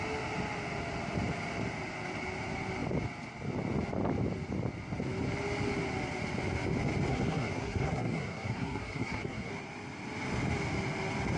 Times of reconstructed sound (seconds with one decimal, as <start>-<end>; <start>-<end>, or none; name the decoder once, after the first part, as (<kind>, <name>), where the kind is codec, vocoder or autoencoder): 7.1-9.5 (codec, SNAC)